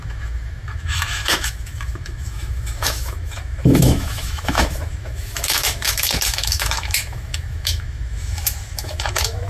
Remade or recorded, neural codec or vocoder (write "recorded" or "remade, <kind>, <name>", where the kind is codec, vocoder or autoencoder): remade, autoencoder, DAC-VAE